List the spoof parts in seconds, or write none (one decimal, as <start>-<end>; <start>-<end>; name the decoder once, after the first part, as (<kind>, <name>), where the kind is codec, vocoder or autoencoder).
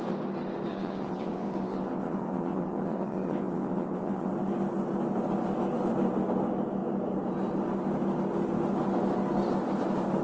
0.7-4.3 (vocoder, WaveNeXt)